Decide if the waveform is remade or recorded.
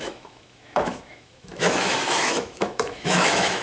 remade